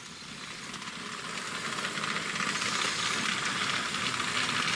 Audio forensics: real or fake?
real